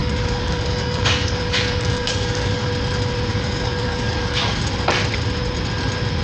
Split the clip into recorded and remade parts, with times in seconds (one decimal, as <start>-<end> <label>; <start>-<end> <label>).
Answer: 0.0-2.7 remade; 2.7-3.3 recorded; 3.3-4.6 remade; 4.6-6.2 recorded